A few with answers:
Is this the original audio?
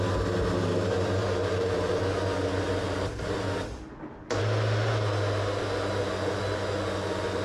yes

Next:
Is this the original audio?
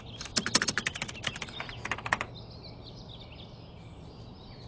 yes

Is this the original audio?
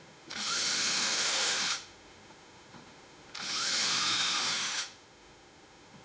no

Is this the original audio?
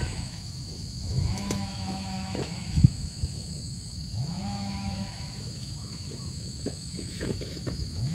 no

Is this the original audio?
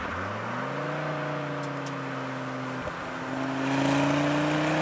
yes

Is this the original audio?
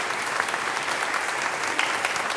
yes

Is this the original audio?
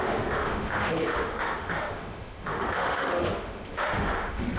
no